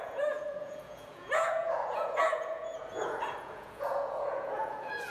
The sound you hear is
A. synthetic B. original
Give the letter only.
A